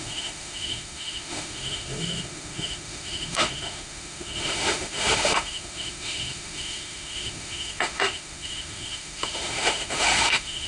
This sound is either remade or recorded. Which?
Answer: remade